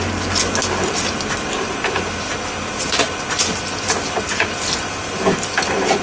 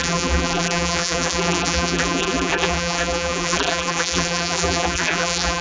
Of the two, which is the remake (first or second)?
second